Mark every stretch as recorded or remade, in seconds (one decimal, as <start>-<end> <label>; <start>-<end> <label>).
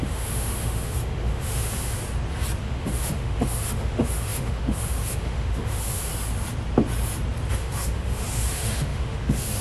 0.0-2.0 remade; 2.0-2.6 recorded; 2.6-6.1 remade; 6.1-7.5 recorded; 7.5-9.6 remade